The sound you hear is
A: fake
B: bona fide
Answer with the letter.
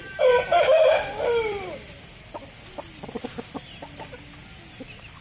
A